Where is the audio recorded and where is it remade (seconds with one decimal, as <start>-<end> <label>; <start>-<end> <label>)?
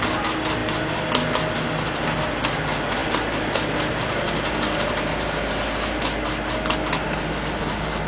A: 0.0-8.1 recorded